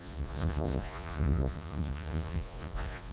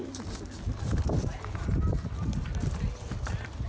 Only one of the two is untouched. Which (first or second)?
second